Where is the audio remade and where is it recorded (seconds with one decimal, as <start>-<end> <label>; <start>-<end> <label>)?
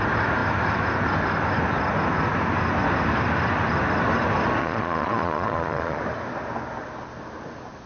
0.0-4.6 recorded; 4.6-6.0 remade; 6.0-7.9 recorded